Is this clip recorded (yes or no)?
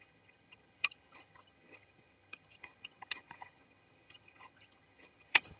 no